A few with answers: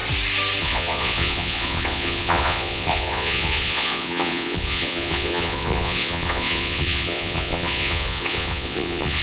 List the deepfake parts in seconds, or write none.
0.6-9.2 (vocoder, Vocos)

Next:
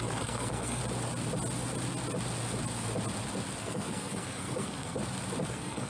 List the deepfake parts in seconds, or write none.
0.0-0.8 (codec, SNAC); 3.6-5.0; 5.5-5.9